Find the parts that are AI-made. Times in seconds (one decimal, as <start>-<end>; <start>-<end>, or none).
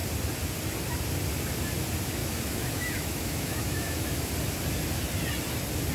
2.2-4.3